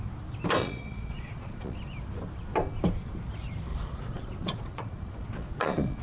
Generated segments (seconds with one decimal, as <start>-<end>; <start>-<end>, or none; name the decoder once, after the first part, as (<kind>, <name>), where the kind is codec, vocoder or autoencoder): 0.6-1.8 (vocoder, Vocos); 3.7-6.0